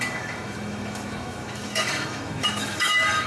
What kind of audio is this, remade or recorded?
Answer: remade